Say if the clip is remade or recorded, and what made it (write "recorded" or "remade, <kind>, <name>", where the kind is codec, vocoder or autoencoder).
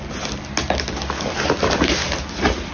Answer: recorded